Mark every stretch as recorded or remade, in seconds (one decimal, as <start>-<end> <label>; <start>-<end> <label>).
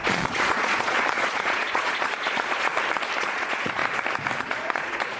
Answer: 0.0-2.7 remade; 2.7-3.2 recorded; 3.2-3.8 remade; 3.8-4.4 recorded; 4.4-5.2 remade